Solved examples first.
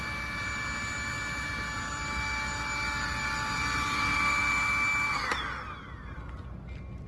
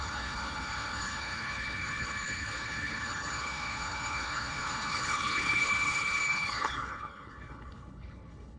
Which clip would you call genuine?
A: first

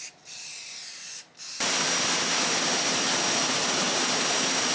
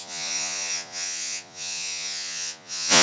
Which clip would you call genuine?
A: first